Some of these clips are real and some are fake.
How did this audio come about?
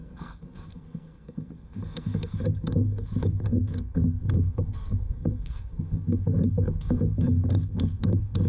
fake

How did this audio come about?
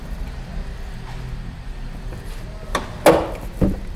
real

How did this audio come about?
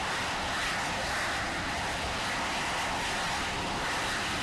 real